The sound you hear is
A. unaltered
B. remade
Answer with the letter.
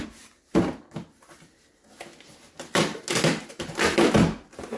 A